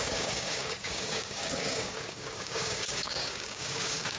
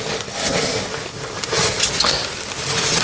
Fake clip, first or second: first